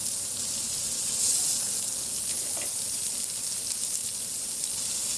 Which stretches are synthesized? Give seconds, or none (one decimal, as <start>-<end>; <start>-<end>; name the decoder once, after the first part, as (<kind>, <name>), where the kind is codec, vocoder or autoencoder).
none